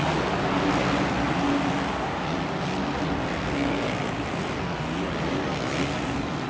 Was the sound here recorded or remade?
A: recorded